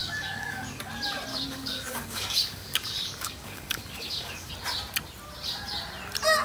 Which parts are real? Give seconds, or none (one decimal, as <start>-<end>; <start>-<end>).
0.9-1.3; 4.5-6.4